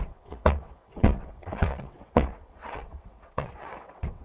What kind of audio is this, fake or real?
fake